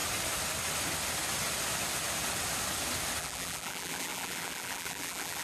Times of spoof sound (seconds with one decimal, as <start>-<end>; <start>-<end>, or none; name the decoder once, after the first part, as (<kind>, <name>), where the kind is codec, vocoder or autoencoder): 3.2-5.4 (vocoder, BigVGAN v2)